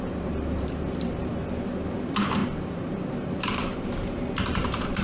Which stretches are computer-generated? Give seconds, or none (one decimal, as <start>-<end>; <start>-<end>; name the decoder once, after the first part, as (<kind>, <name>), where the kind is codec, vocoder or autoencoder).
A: 0.0-1.3 (vocoder, BigVGAN v2); 1.9-5.0